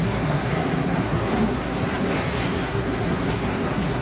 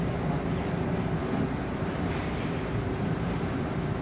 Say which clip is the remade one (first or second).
first